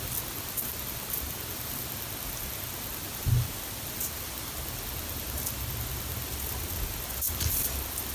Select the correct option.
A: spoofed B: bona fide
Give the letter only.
B